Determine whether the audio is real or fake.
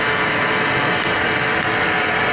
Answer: real